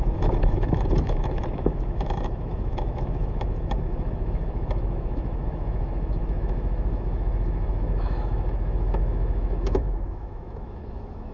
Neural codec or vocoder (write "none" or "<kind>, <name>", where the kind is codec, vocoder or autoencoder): autoencoder, DAC-VAE